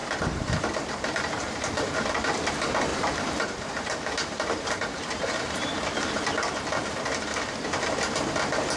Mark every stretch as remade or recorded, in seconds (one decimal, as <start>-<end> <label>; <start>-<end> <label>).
0.0-2.5 remade; 2.5-2.9 recorded; 2.9-6.8 remade; 6.8-8.8 recorded